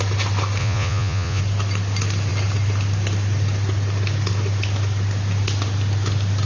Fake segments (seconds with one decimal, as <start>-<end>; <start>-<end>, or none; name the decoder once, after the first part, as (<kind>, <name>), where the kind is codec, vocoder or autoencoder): 0.6-1.4 (vocoder, Vocos)